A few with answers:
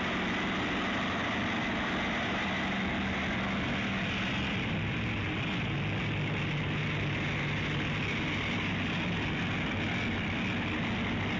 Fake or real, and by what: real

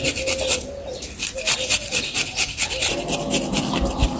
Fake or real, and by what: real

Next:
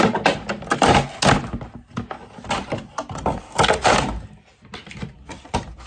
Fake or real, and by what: real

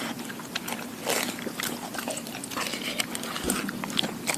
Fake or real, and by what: real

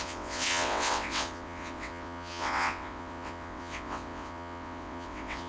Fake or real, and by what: fake, vocoder, WaveNeXt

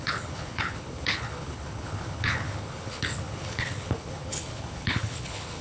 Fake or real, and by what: fake, codec, HILCodec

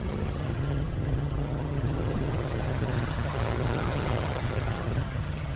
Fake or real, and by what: fake, vocoder, HiFi-GAN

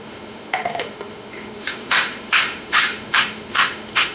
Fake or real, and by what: fake, autoencoder, DAC-VAE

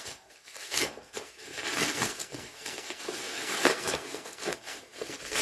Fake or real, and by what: fake, codec, SNAC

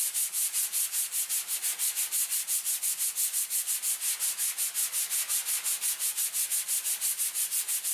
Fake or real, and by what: real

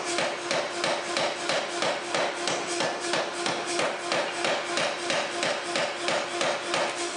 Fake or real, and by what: real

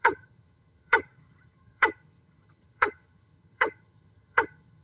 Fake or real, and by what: fake, vocoder, HiFi-GAN